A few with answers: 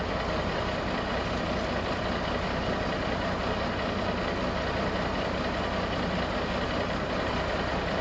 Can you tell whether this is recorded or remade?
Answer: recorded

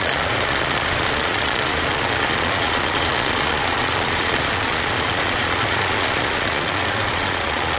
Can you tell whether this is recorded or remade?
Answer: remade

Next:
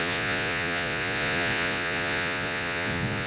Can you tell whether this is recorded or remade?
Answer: remade